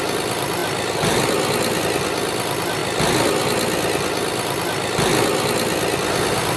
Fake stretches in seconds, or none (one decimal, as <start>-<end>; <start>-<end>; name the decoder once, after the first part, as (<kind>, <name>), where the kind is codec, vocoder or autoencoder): none